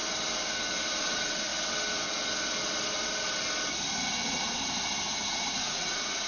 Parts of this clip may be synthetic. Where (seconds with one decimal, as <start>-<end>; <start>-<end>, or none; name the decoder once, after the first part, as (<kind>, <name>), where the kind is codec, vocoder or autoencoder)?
1.0-1.5 (vocoder, Vocos); 5.3-6.3